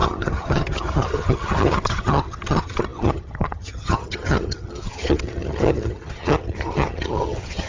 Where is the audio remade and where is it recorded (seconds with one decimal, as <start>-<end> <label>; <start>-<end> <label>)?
0.0-7.7 remade